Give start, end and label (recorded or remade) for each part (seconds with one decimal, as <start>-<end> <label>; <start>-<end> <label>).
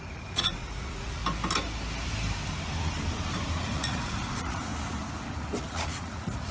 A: 0.0-1.2 remade; 1.2-3.6 recorded; 3.6-4.7 remade; 4.7-5.6 recorded; 5.6-6.5 remade